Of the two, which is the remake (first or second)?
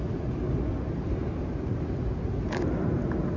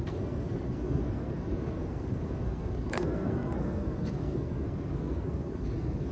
second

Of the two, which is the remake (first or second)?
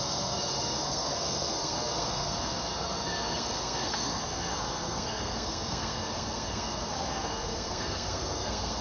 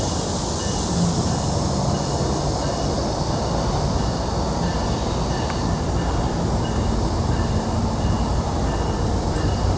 first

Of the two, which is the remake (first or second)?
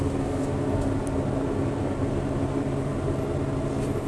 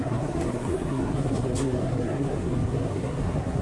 second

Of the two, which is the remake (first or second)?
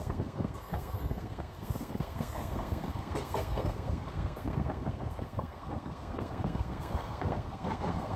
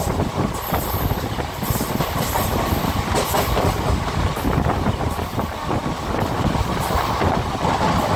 first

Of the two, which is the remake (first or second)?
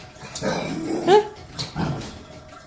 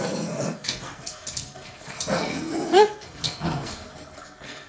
second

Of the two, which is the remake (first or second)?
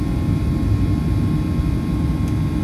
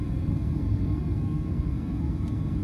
second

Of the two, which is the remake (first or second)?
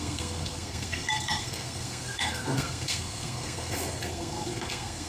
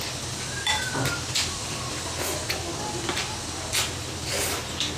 first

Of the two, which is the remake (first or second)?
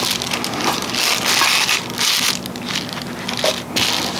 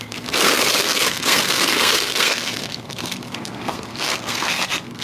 second